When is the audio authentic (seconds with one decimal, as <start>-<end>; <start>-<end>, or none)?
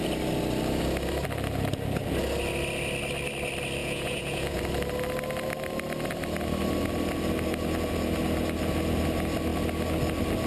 0.0-3.8; 4.6-10.5